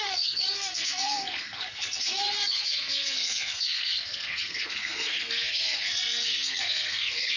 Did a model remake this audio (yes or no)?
yes